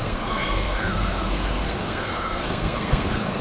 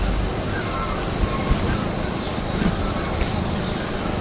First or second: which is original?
second